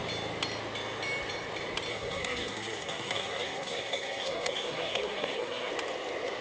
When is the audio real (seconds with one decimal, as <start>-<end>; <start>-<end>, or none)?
0.0-1.9; 5.7-6.4